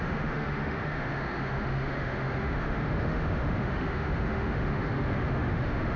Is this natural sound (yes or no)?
no